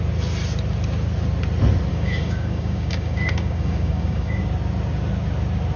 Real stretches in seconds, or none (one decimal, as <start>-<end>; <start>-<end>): 0.0-1.9; 4.4-5.8

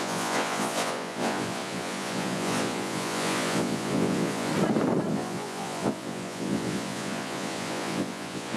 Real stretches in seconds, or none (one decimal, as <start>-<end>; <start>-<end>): 4.5-5.1

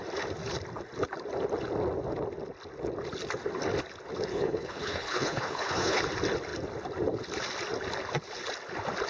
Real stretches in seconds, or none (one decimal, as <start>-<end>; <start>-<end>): 0.0-4.3; 6.0-9.1

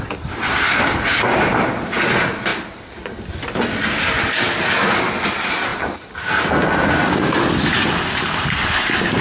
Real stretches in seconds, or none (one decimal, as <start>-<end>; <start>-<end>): 0.0-9.2